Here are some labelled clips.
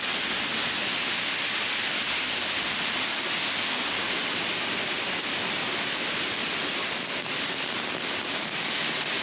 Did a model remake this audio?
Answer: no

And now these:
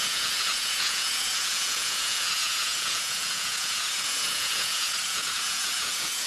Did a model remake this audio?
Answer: yes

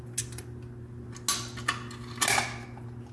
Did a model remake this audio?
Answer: no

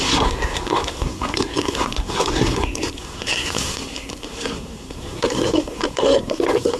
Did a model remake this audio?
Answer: yes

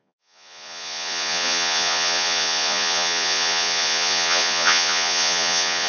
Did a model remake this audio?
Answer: yes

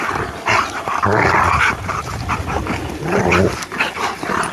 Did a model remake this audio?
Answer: no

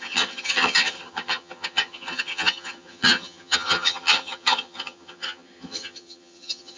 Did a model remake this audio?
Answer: yes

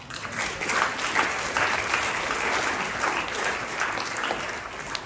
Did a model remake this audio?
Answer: no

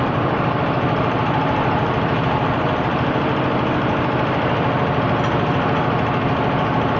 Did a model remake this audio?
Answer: yes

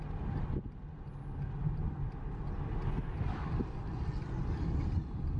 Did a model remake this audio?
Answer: no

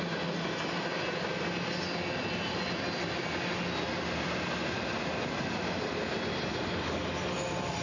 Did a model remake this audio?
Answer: no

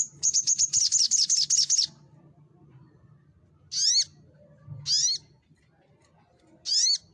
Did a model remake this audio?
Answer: no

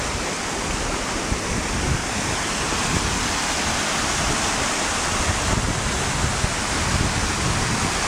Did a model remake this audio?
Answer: no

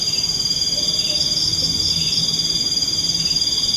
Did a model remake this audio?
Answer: no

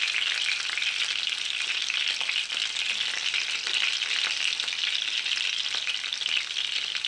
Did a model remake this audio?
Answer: no